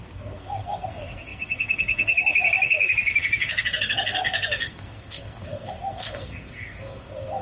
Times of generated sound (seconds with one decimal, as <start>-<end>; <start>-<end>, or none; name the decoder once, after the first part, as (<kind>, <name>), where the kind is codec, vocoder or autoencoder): 0.0-7.4 (codec, SNAC)